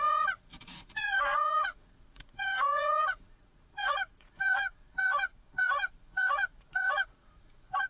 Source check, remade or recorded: remade